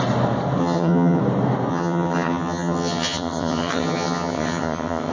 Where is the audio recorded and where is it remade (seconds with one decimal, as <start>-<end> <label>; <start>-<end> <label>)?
0.0-0.6 recorded; 0.6-1.2 remade; 1.2-1.7 recorded; 1.7-5.1 remade